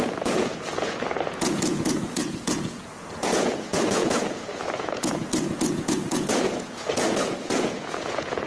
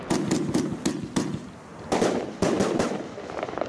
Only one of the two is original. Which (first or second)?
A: second